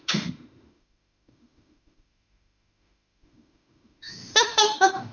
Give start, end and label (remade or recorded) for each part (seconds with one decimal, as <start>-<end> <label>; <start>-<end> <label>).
0.0-5.1 remade